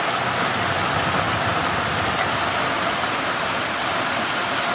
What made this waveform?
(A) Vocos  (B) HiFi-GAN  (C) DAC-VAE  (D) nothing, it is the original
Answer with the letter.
D